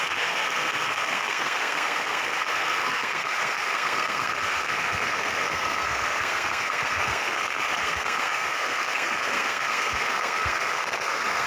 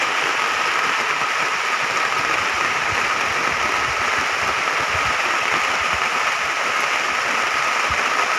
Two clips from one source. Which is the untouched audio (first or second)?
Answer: second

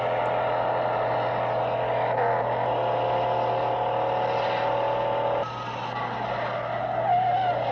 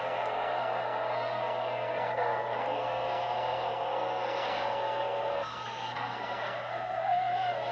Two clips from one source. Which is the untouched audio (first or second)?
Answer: first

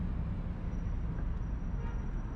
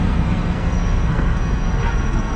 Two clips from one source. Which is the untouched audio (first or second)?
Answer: first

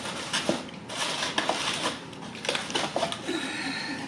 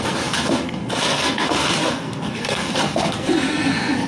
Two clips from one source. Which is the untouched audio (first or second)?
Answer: first